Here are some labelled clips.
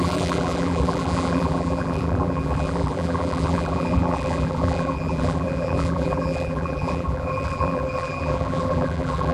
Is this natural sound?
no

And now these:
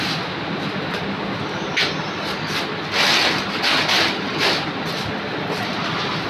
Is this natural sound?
yes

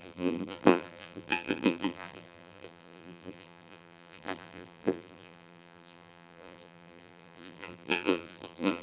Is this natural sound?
no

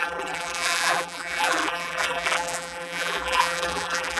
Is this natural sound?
no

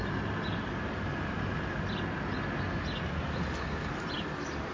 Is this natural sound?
yes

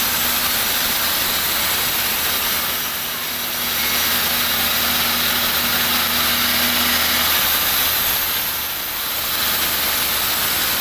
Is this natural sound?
yes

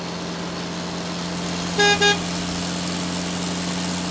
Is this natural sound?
yes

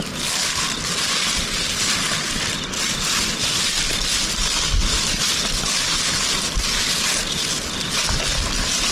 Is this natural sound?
yes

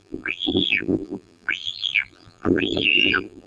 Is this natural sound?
no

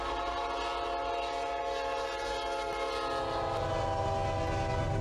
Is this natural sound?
yes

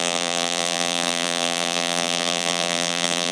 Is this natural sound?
no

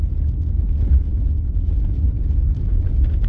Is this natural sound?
yes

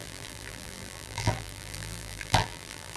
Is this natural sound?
no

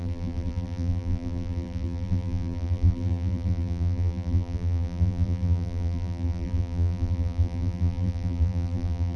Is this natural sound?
no